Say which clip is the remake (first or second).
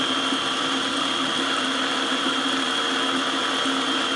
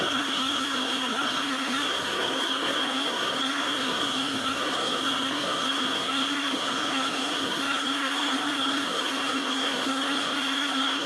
second